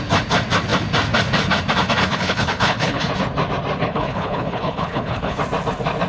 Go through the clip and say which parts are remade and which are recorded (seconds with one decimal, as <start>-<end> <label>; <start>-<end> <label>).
0.0-2.0 recorded; 2.0-3.1 remade; 3.1-3.8 recorded; 3.8-5.4 remade; 5.4-6.1 recorded